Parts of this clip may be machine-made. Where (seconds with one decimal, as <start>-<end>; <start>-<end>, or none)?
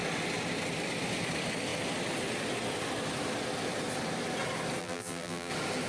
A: 4.8-5.5